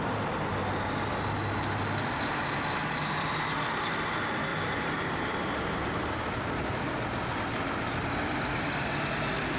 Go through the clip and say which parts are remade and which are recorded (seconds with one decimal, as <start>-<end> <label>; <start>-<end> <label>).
0.0-4.5 recorded; 4.5-6.0 remade; 6.0-9.6 recorded